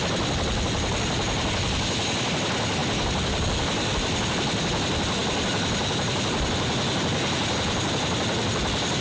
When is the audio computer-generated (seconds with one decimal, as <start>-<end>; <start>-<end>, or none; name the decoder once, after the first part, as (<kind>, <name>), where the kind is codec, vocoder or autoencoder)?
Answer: none